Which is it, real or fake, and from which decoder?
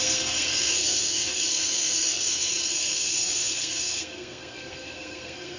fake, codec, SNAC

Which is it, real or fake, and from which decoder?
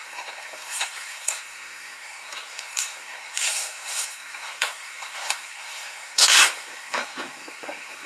fake, codec, SNAC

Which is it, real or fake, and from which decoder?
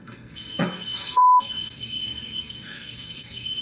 fake, codec, SNAC